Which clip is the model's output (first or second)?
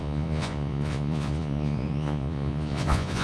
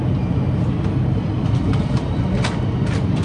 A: first